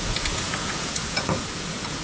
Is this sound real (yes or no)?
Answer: no